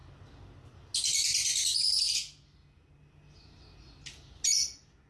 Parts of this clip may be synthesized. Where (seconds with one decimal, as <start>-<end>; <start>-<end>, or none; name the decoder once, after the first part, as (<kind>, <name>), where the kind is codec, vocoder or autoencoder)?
none